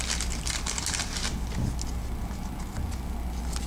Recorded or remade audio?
recorded